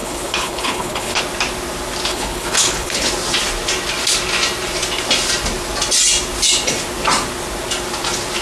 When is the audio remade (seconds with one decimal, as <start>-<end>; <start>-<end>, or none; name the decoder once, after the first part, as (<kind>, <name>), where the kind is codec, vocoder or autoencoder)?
0.0-1.2 (codec, HILCodec); 2.1-3.1